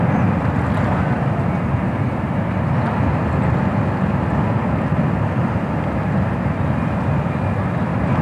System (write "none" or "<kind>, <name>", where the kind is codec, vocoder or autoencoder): none